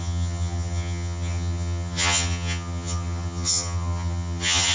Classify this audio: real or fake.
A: fake